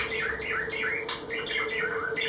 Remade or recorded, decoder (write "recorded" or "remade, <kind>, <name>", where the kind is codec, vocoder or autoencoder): recorded